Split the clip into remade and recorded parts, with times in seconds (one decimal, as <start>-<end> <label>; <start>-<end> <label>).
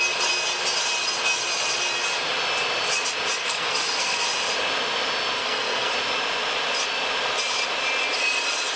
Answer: 0.0-3.4 recorded; 3.4-4.2 remade; 4.2-5.4 recorded; 5.4-5.9 remade; 5.9-8.8 recorded